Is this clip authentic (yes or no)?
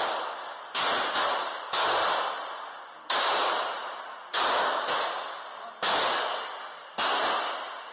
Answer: yes